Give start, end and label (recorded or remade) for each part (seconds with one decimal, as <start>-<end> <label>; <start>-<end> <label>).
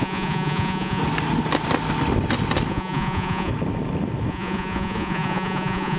0.0-1.0 remade; 1.0-2.7 recorded; 2.7-3.5 remade; 3.5-4.3 recorded; 4.3-6.0 remade